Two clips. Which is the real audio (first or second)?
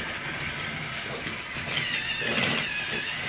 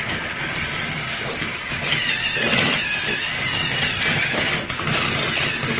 first